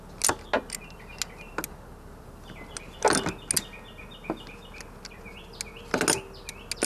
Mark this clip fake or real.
real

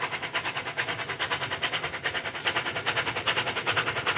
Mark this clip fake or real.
real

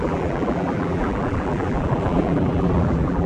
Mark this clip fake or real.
fake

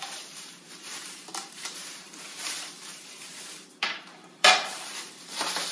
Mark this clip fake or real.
fake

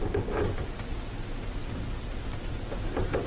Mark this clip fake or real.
real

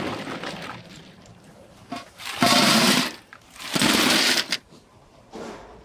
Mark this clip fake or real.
fake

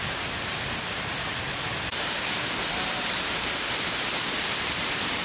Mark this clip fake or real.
fake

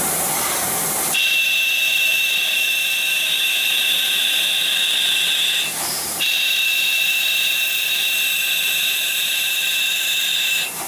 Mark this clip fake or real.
fake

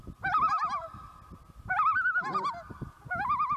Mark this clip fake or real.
real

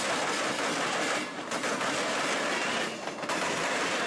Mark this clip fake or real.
real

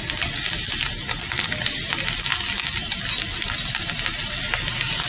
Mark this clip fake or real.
real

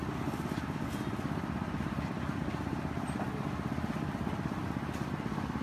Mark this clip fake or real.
real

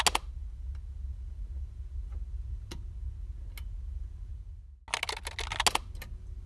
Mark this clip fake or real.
real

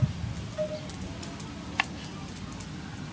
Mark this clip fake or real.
real